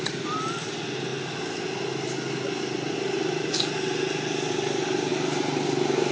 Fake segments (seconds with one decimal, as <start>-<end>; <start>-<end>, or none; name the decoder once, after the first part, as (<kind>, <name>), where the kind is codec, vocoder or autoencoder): none